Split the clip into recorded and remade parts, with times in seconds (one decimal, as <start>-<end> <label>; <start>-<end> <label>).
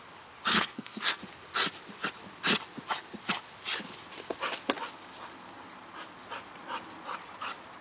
0.0-0.5 recorded; 0.5-1.2 remade; 1.2-7.8 recorded